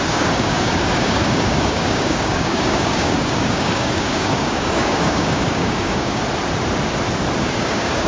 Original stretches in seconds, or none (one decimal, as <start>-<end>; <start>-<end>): 6.2-7.4